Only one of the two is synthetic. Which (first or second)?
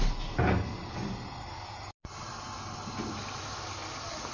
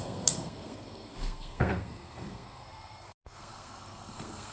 second